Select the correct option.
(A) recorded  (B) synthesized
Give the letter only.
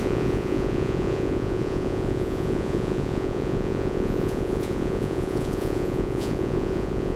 B